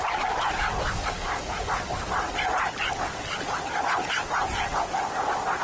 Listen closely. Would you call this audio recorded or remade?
recorded